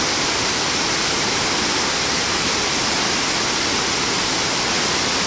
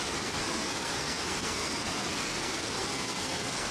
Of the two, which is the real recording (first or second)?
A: first